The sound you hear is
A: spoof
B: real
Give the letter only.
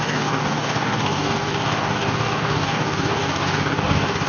A